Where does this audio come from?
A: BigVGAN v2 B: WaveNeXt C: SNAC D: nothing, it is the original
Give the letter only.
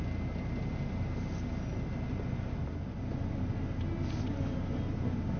D